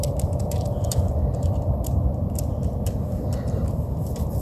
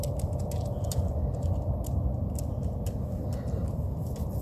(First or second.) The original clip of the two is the second